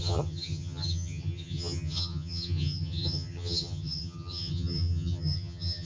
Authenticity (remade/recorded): remade